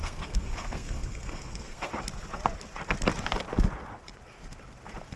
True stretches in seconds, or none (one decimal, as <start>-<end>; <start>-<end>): 1.9-5.2